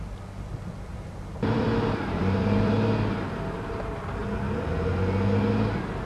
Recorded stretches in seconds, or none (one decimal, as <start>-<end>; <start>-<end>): 0.0-0.9; 2.7-4.2; 4.9-6.0